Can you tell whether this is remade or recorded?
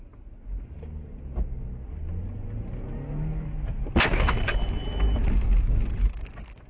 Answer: recorded